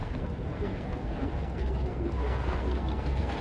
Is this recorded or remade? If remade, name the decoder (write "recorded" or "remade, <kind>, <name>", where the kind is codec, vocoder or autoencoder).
remade, codec, SNAC